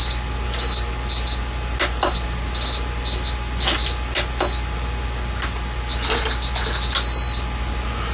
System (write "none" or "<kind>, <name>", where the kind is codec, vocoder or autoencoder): none